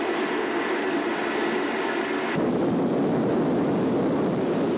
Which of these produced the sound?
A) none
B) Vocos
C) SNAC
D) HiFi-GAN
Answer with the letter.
A